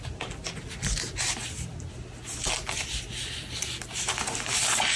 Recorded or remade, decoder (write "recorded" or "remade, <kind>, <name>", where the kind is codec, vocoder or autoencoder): recorded